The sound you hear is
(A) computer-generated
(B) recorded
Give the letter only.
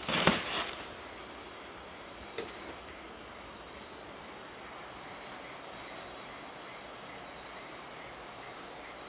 B